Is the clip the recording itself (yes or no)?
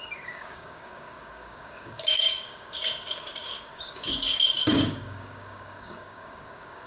no